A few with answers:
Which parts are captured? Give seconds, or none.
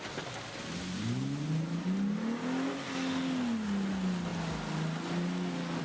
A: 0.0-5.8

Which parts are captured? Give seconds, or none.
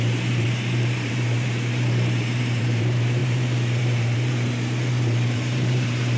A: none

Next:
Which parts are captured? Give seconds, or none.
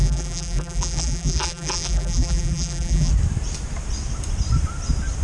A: 3.1-5.2